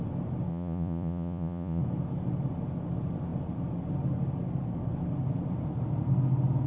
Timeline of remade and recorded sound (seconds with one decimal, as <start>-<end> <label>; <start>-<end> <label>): 0.0-0.5 recorded; 0.5-1.8 remade; 1.8-6.7 recorded